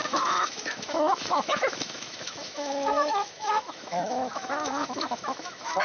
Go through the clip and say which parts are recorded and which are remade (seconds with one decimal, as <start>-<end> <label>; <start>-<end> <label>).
0.0-5.8 remade

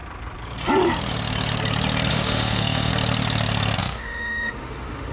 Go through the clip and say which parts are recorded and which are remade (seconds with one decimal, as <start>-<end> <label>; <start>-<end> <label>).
0.0-2.1 recorded; 2.1-2.9 remade; 2.9-3.8 recorded; 3.8-5.1 remade

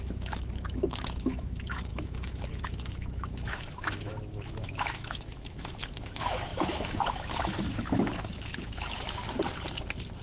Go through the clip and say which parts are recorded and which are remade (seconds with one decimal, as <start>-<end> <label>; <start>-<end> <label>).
0.0-9.2 remade; 9.2-10.2 recorded

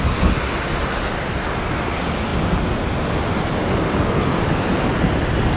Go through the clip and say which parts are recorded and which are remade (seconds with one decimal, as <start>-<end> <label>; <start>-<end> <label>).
0.0-5.6 recorded

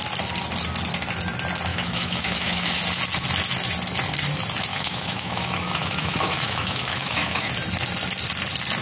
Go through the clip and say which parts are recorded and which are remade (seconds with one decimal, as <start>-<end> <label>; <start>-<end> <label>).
0.0-1.7 recorded; 1.7-2.8 remade; 2.8-4.7 recorded; 4.7-7.5 remade; 7.5-8.8 recorded

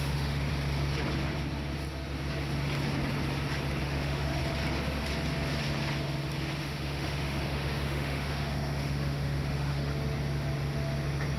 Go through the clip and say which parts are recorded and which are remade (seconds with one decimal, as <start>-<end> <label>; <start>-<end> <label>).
0.0-0.5 remade; 0.5-3.8 recorded; 3.8-4.4 remade; 4.4-6.6 recorded; 6.6-9.9 remade; 9.9-11.4 recorded

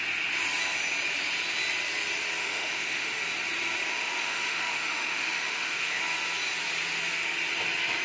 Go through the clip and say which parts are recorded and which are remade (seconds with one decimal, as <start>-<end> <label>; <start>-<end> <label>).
0.0-2.4 recorded; 2.4-3.2 remade; 3.2-3.9 recorded; 3.9-6.0 remade; 6.0-8.0 recorded

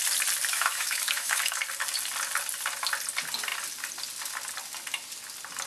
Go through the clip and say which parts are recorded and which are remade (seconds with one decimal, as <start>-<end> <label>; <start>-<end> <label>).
0.0-0.5 recorded; 0.5-1.6 remade; 1.6-5.7 recorded